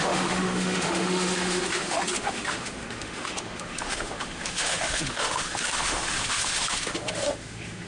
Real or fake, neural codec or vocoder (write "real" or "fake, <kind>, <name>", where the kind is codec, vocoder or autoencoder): fake, autoencoder, DAC-VAE